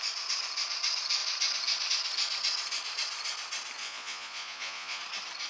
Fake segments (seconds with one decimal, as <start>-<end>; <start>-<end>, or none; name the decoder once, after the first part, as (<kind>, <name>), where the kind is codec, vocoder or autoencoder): 3.8-5.0 (vocoder, Vocos)